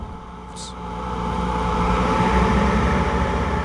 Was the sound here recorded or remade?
remade